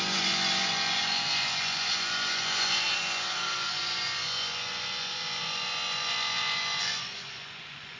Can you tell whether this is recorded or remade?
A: remade